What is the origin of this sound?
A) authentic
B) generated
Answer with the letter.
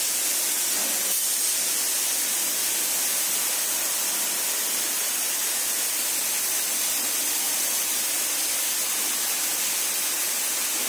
A